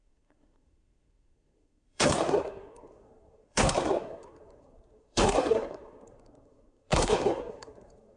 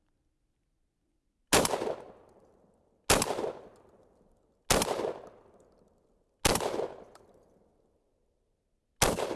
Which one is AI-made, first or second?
first